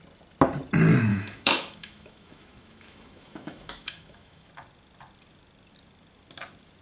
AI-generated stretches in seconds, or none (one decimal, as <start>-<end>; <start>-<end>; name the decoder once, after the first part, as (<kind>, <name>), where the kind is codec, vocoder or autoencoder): 1.1-4.5 (autoencoder, DAC-VAE)